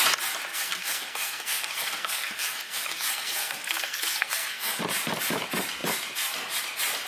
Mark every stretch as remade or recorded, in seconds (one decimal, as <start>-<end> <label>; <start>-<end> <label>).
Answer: 0.0-0.5 recorded; 0.5-4.8 remade; 4.8-7.1 recorded